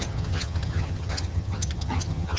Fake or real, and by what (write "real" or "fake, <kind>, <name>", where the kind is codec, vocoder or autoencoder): fake, vocoder, HiFi-GAN